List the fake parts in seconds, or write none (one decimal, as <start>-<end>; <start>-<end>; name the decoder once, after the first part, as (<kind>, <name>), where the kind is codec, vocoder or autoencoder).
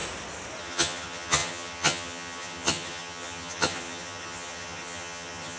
0.6-5.6 (vocoder, HiFi-GAN)